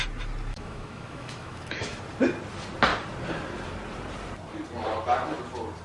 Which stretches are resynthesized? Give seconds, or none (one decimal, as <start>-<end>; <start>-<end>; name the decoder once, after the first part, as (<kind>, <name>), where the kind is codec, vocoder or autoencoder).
0.5-2.0 (autoencoder, DAC-VAE)